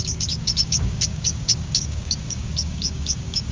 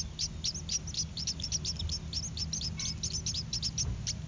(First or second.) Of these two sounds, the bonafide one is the second